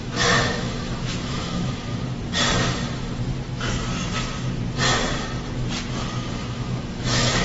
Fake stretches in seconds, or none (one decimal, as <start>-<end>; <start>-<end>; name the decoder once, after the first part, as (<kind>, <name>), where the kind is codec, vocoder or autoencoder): 0.0-1.9 (autoencoder, DAC-VAE); 6.3-7.4